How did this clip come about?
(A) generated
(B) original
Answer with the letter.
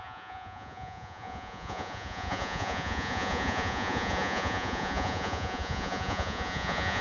A